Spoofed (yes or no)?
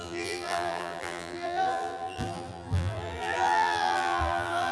yes